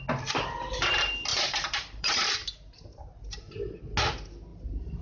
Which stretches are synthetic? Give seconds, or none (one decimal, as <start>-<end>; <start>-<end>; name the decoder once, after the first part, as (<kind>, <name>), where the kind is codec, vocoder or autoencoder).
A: 1.3-3.8 (vocoder, BigVGAN v2)